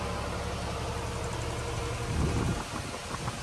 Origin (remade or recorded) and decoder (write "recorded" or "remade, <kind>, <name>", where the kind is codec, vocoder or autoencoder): recorded